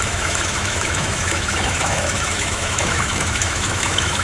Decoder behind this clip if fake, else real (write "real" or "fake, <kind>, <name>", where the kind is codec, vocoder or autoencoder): fake, autoencoder, DAC-VAE